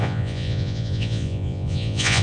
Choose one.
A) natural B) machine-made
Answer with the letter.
B